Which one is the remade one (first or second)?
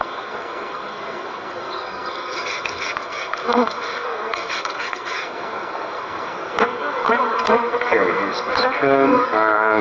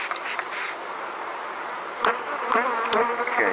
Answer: first